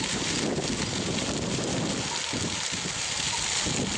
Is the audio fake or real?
real